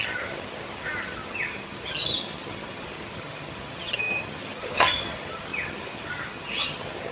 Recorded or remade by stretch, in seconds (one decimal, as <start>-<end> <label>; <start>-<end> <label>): 0.0-7.1 remade